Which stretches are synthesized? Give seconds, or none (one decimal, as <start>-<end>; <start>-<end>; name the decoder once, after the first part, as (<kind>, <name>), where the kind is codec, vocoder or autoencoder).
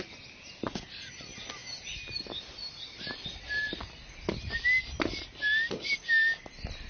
none